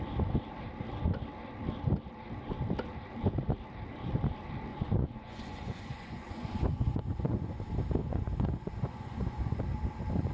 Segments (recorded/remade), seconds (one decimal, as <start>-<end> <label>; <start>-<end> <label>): 0.0-4.7 recorded; 4.7-7.6 remade; 7.6-8.0 recorded; 8.0-9.6 remade; 9.6-10.3 recorded